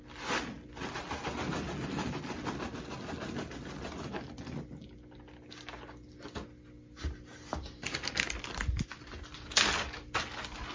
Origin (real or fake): real